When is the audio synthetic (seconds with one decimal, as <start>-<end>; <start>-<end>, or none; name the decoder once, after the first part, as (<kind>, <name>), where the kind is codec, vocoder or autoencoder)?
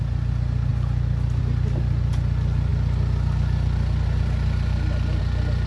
none